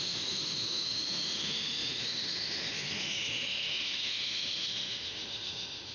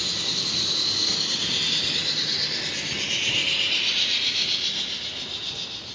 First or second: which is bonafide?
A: second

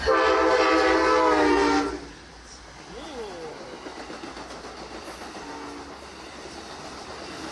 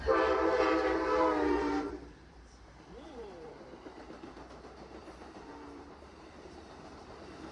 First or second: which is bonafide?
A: first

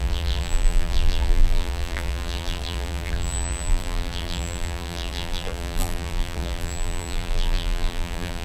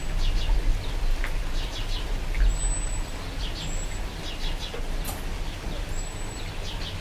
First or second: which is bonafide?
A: second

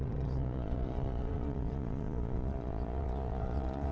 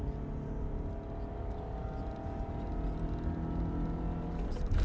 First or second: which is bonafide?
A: second